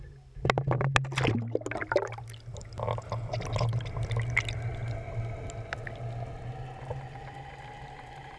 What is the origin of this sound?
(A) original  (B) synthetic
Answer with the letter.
A